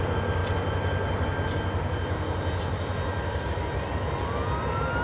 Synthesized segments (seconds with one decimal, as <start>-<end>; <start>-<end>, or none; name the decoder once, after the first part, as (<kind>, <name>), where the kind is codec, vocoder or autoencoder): none